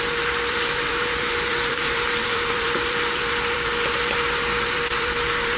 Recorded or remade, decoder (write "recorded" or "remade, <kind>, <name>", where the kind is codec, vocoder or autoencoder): remade, vocoder, BigVGAN v2